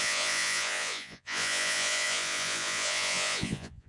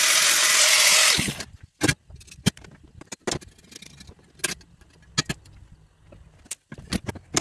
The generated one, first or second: first